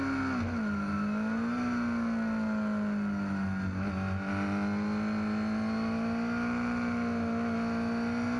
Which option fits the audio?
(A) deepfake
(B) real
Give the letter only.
B